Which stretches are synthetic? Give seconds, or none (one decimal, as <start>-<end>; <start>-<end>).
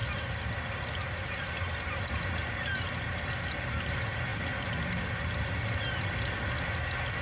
none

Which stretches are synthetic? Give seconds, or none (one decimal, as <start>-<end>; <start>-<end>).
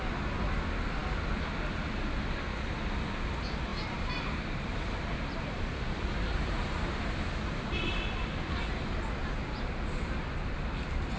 3.7-6.9